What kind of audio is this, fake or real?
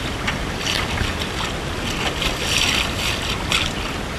real